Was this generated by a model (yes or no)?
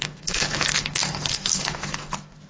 yes